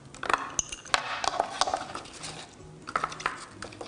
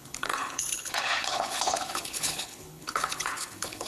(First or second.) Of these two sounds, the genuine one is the first